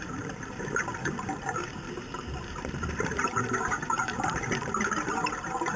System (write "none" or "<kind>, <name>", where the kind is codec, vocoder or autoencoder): vocoder, BigVGAN v2